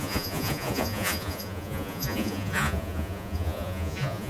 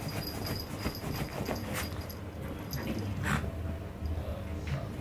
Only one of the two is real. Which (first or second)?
second